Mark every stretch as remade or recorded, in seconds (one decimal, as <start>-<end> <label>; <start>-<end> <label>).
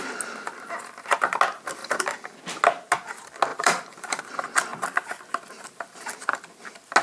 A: 0.0-1.8 recorded; 1.8-2.4 remade; 2.4-3.5 recorded; 3.5-4.2 remade; 4.2-7.0 recorded